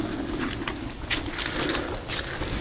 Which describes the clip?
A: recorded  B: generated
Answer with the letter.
A